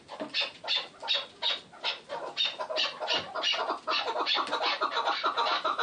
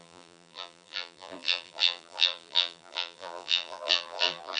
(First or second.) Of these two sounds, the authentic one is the first